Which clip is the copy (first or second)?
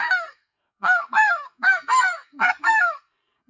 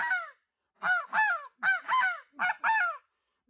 first